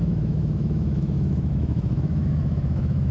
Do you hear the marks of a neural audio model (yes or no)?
yes